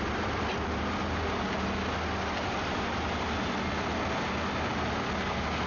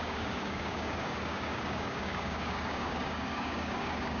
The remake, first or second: second